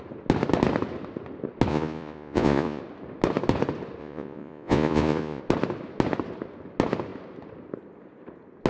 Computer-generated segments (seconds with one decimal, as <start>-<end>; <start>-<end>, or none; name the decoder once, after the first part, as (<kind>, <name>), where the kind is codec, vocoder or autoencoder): 1.7-2.8 (vocoder, Vocos); 4.0-5.4